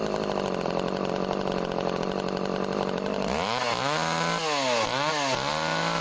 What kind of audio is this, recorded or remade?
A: recorded